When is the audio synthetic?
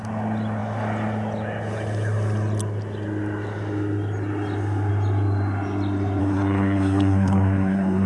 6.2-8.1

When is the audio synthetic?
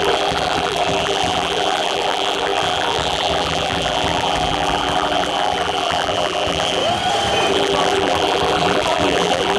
0.0-6.8; 7.5-9.6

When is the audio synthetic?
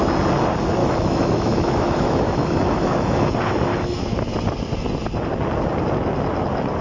0.8-3.3; 3.7-4.3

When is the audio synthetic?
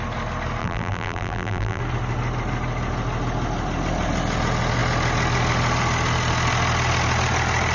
0.6-1.8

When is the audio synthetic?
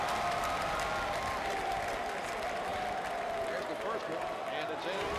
none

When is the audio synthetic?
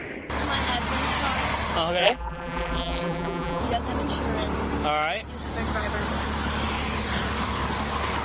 2.0-3.6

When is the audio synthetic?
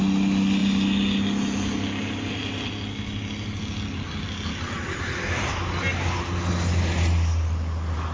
none